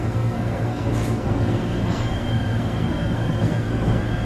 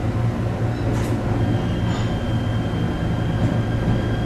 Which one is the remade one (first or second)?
first